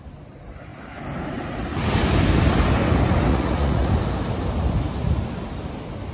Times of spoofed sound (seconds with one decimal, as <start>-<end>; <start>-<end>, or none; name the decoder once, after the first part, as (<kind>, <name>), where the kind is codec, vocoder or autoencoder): 3.3-3.9 (vocoder, Vocos)